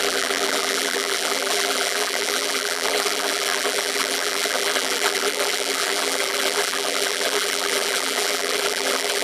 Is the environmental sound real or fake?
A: fake